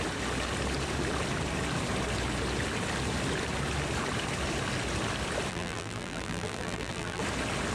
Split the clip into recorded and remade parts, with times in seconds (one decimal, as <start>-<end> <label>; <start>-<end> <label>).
0.0-5.5 recorded; 5.5-7.2 remade; 7.2-7.7 recorded